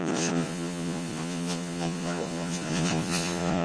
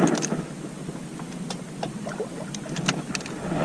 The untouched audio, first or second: second